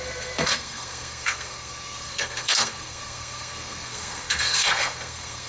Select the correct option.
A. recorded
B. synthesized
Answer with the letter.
B